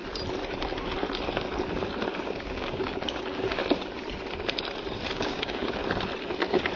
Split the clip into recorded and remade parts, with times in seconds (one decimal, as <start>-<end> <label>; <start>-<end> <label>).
0.0-2.2 recorded; 2.2-3.6 remade; 3.6-5.1 recorded; 5.1-5.8 remade; 5.8-6.8 recorded